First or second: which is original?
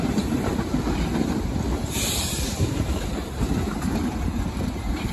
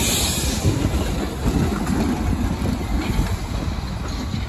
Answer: second